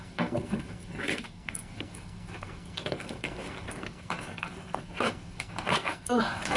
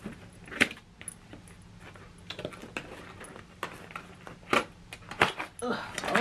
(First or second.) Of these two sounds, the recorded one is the second